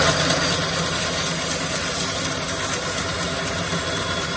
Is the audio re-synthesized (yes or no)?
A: no